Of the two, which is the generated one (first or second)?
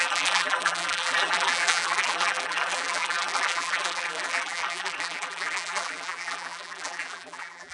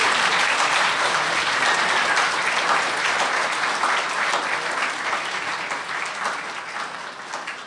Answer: first